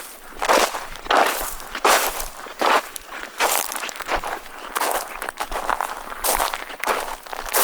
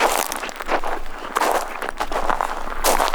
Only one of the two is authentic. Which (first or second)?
second